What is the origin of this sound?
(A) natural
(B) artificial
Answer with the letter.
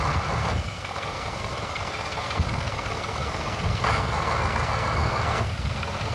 B